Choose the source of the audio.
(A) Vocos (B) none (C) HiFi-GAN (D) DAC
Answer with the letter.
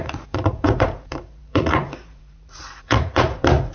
A